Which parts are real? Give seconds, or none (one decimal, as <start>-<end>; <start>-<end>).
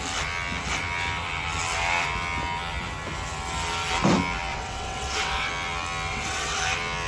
0.0-4.5; 5.5-6.1; 6.6-7.1